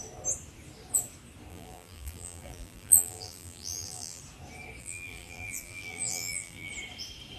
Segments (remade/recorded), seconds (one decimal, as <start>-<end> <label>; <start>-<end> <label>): 0.0-1.5 recorded; 1.5-4.2 remade; 4.2-4.8 recorded; 4.8-6.7 remade; 6.7-7.4 recorded